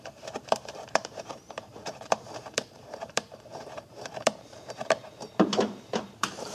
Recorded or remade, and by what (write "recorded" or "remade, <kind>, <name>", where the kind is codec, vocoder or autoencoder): remade, vocoder, BigVGAN v2